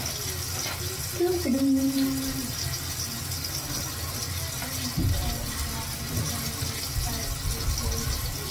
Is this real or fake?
real